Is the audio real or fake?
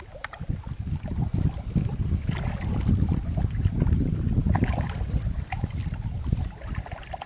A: real